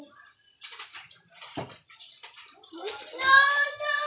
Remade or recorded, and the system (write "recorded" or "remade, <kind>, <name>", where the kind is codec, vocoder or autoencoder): remade, vocoder, BigVGAN v2